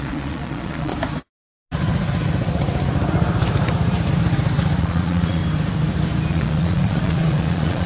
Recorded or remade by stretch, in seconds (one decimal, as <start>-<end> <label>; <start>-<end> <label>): 0.0-0.9 remade; 0.9-4.8 recorded; 4.8-5.4 remade; 5.4-6.3 recorded; 6.3-7.9 remade